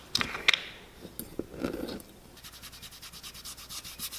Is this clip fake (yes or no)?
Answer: no